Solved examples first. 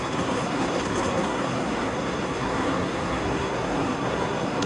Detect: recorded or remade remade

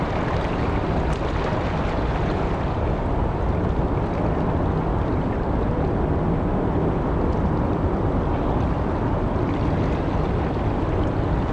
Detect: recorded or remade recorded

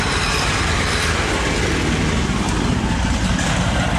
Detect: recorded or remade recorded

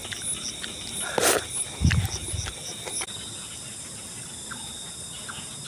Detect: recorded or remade recorded